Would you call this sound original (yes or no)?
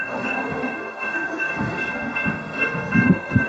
no